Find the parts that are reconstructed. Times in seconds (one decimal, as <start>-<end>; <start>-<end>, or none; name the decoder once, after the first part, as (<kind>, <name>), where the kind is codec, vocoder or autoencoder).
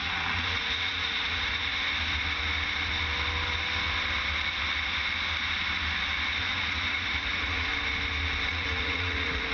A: 0.0-1.7 (vocoder, Vocos); 6.4-7.7; 8.5-9.5